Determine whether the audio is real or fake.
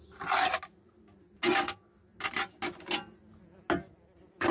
real